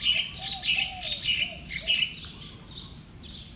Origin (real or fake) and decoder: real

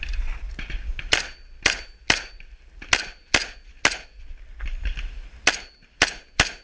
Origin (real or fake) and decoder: real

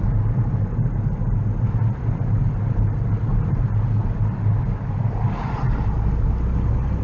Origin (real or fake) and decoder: real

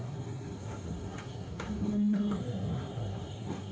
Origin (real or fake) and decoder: fake, codec, SNAC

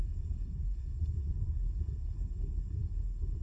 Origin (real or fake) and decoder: fake, codec, SNAC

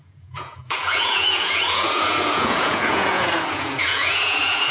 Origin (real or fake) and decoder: fake, vocoder, Vocos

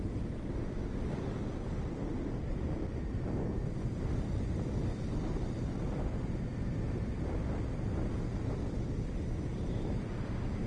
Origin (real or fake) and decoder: real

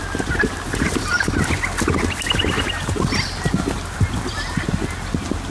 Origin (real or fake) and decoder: real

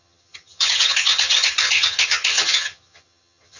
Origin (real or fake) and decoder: fake, vocoder, HiFi-GAN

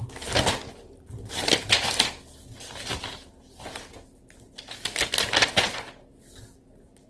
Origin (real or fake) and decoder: real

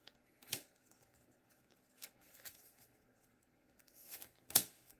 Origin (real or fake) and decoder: fake, codec, SNAC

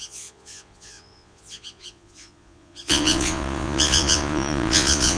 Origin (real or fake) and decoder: fake, vocoder, Vocos